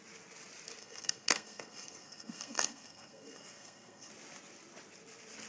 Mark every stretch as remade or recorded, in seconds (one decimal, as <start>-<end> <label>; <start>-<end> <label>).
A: 0.0-0.8 recorded; 0.8-4.1 remade; 4.1-5.5 recorded